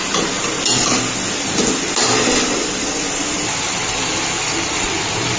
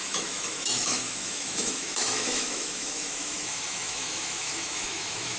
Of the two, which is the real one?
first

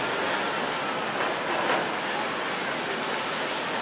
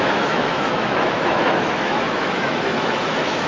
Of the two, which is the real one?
first